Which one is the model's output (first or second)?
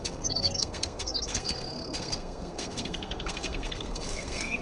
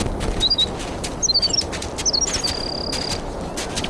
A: first